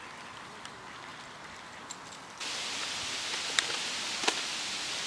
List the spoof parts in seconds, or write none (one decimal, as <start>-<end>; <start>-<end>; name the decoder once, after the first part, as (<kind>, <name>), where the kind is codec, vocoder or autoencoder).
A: none